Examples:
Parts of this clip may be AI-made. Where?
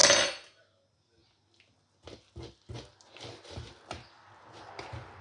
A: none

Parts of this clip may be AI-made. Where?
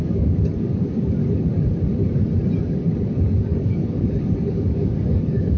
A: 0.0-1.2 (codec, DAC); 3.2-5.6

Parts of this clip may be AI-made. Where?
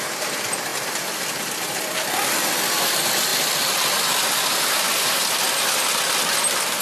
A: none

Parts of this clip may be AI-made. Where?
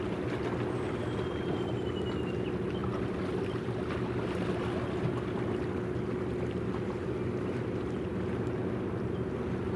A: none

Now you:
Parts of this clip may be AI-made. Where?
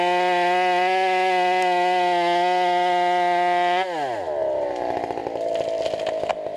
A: none